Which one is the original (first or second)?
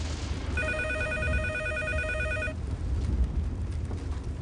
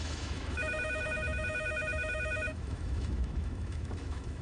first